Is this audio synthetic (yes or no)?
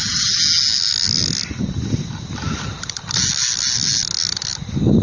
no